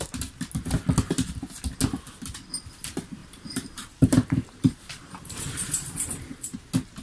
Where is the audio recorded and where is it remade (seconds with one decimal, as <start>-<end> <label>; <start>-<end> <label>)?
0.0-3.2 recorded; 3.2-6.6 remade; 6.6-7.0 recorded